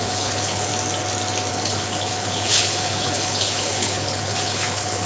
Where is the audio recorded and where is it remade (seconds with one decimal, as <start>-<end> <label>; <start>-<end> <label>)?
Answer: 0.0-0.7 remade; 0.7-1.5 recorded; 1.5-5.1 remade